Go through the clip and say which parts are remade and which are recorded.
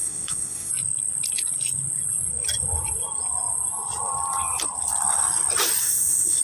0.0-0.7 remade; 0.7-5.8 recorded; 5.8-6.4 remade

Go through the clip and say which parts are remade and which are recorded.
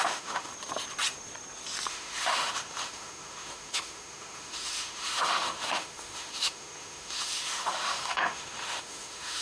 0.0-0.5 remade; 0.5-1.9 recorded; 1.9-9.4 remade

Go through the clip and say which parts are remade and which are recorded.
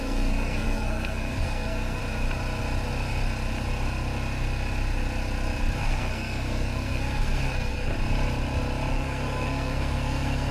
0.0-2.0 remade; 2.0-5.8 recorded; 5.8-7.9 remade; 7.9-8.9 recorded; 8.9-10.5 remade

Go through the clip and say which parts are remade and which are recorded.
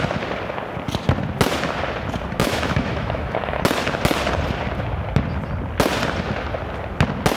0.0-2.4 recorded; 2.4-3.6 remade; 3.6-7.4 recorded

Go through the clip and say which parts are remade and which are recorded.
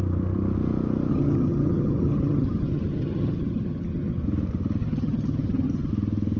0.0-1.1 recorded; 1.1-4.2 remade; 4.2-4.8 recorded; 4.8-5.9 remade; 5.9-6.4 recorded